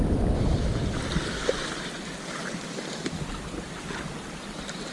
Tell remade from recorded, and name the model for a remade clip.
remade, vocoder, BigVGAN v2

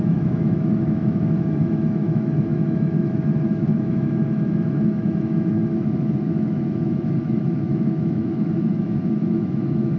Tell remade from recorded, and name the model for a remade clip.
remade, autoencoder, DAC-VAE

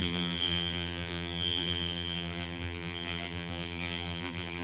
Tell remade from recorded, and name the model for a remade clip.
remade, vocoder, BigVGAN v2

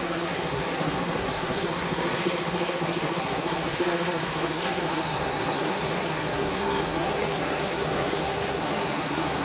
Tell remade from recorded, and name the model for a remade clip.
remade, codec, SNAC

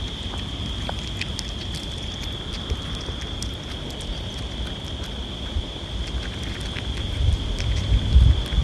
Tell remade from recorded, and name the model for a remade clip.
recorded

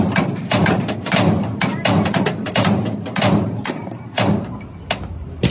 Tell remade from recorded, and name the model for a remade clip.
recorded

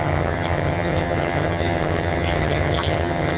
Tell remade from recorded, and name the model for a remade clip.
remade, vocoder, HiFi-GAN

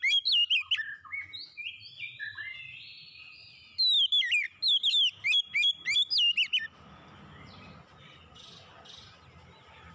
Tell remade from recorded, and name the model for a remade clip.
recorded